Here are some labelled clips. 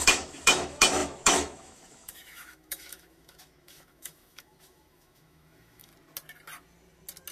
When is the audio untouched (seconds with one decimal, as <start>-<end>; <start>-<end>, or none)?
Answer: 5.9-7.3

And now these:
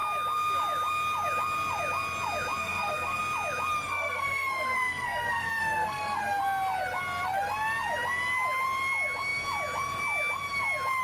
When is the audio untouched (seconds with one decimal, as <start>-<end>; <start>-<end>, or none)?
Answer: 0.0-2.6; 3.2-3.9; 6.4-11.0

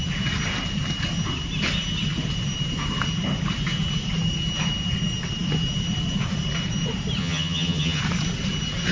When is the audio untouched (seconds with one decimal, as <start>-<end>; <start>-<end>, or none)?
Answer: 0.0-7.2; 8.0-8.9

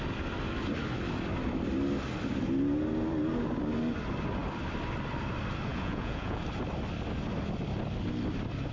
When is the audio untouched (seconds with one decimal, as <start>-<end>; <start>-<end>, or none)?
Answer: 0.0-5.7; 6.4-8.7

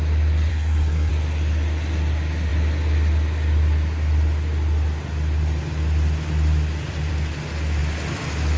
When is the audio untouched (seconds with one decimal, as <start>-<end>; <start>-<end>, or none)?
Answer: 0.0-0.5; 1.1-8.6

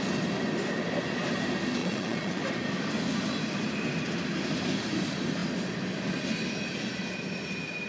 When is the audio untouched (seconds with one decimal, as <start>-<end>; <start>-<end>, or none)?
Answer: 0.0-1.8; 2.4-7.9

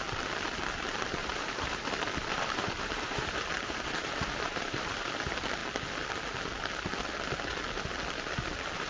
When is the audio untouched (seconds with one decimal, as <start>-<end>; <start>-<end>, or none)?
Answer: 0.0-1.2; 1.8-2.3; 5.1-8.9

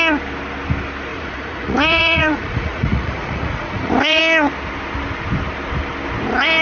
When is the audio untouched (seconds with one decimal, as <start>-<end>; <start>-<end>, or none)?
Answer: 0.0-1.1; 4.2-6.6